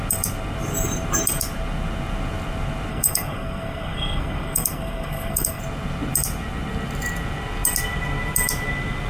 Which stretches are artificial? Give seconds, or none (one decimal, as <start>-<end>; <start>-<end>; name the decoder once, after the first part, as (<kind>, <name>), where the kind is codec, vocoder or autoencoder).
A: 2.9-5.6 (codec, SNAC)